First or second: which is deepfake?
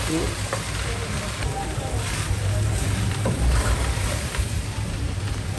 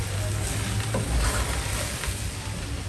first